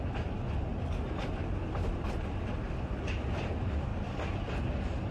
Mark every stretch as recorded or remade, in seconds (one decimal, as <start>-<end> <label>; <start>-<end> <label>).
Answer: 0.0-5.1 recorded